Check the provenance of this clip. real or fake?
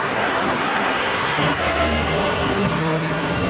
fake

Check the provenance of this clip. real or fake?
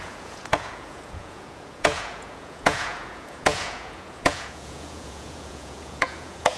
fake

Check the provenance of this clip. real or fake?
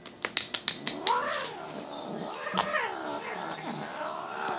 real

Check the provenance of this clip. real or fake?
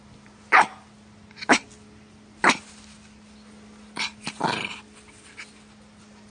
real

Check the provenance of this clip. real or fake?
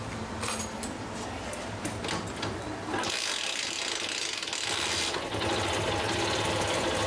real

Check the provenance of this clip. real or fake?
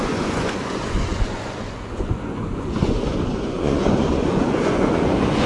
fake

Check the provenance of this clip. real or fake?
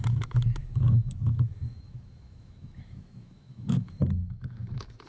fake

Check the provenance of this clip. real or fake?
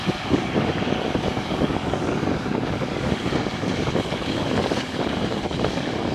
fake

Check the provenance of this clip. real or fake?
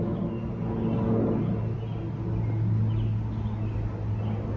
real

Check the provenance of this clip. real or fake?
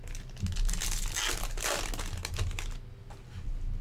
real